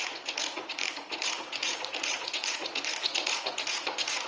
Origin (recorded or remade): remade